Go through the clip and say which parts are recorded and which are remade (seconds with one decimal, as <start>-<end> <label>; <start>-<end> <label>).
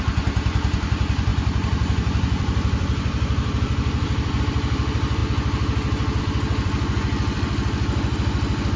0.0-5.2 remade; 5.2-6.2 recorded; 6.2-8.8 remade